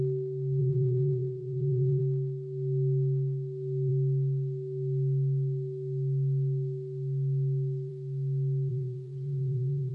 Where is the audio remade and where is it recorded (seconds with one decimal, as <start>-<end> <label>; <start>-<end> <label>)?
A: 0.0-0.6 recorded; 0.6-2.0 remade; 2.0-8.7 recorded; 8.7-9.9 remade